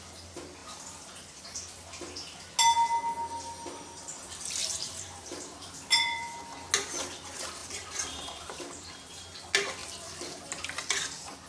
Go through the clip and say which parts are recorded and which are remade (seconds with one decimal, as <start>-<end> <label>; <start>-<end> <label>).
0.0-4.6 recorded; 4.6-6.4 remade; 6.4-7.6 recorded; 7.6-9.2 remade; 9.2-11.5 recorded